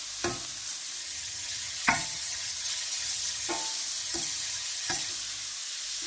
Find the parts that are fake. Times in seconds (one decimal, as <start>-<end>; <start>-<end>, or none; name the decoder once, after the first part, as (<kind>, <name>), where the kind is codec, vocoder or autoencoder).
1.0-3.5 (vocoder, HiFi-GAN); 4.0-5.1

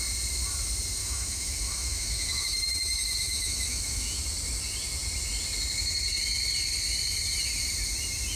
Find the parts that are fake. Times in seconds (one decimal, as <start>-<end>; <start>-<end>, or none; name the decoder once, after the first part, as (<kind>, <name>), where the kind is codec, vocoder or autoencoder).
1.0-4.2 (autoencoder, DAC-VAE)

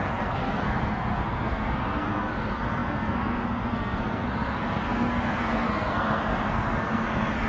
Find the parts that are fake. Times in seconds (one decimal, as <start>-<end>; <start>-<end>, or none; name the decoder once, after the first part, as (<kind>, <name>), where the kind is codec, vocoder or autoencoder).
0.0-7.5 (codec, SNAC)

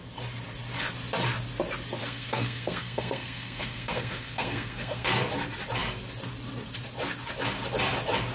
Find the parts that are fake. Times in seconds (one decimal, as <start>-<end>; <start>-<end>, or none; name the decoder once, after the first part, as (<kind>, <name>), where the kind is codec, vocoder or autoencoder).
2.0-5.2 (codec, SNAC)

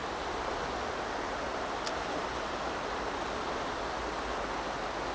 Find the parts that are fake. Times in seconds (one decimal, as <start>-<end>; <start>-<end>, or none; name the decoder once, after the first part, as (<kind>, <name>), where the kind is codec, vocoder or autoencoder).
none